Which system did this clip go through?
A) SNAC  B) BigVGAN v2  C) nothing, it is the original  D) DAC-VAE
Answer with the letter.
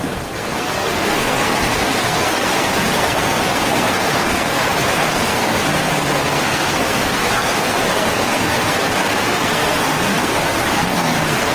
A